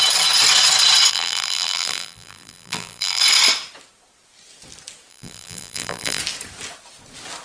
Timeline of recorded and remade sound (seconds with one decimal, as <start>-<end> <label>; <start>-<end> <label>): 0.0-1.1 recorded; 1.1-3.2 remade; 3.2-5.1 recorded; 5.1-6.2 remade; 6.2-7.4 recorded